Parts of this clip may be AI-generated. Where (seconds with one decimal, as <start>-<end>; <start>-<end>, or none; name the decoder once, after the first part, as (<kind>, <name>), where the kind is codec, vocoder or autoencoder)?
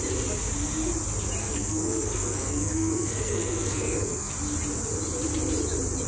1.4-4.3 (codec, SNAC)